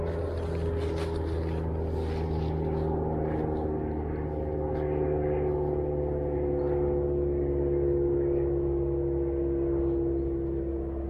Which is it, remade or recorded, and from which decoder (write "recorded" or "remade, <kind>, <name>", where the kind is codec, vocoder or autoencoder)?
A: recorded